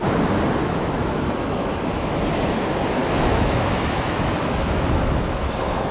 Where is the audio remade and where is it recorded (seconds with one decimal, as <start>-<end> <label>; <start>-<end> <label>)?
0.0-0.6 recorded; 0.6-2.2 remade; 2.2-3.0 recorded; 3.0-5.9 remade